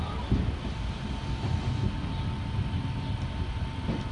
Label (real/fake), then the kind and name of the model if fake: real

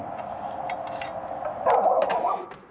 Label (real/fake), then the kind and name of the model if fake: real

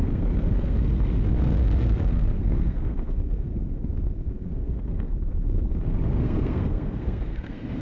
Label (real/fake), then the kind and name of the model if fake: fake, codec, SNAC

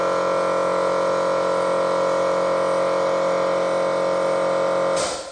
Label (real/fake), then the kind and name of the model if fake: real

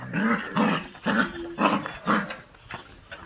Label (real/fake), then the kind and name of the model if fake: real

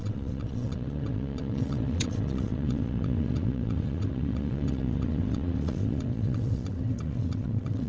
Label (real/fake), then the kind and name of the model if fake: fake, vocoder, WaveNeXt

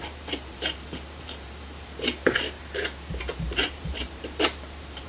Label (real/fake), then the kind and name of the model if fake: fake, vocoder, BigVGAN v2